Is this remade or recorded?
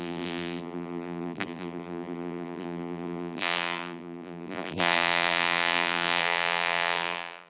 remade